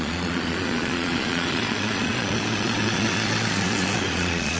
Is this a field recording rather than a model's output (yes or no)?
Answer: no